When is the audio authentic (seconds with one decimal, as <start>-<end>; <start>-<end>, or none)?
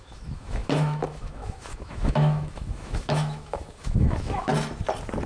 4.5-5.3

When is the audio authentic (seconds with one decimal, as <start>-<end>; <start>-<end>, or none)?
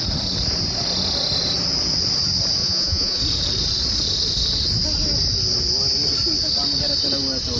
0.0-2.6; 3.2-7.6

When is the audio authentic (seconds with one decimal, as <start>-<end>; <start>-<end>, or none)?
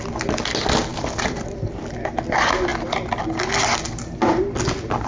0.0-5.1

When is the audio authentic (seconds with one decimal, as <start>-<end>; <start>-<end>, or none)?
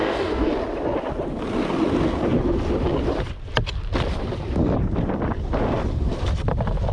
0.5-6.9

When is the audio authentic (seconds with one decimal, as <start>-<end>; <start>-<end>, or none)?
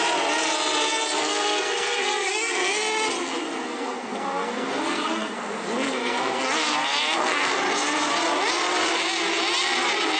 0.0-1.2; 2.7-3.4; 7.6-10.2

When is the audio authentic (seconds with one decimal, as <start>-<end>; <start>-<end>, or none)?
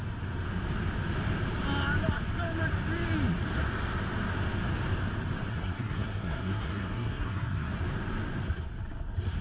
0.0-5.5; 7.7-9.4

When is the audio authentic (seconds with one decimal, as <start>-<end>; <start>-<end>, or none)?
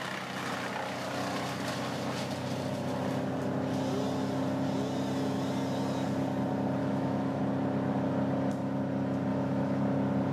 0.0-6.8; 7.4-9.3; 9.8-10.3